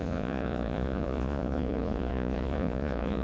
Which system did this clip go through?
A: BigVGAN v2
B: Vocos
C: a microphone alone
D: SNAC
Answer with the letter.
B